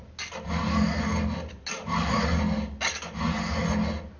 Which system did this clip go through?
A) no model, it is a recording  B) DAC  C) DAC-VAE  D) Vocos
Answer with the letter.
A